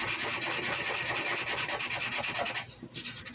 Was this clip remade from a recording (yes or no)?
yes